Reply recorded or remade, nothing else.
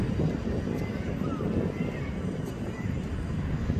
recorded